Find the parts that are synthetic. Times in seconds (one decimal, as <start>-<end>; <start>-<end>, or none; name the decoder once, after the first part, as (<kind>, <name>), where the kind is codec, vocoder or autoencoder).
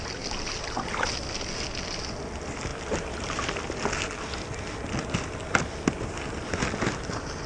none